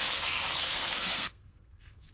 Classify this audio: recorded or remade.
remade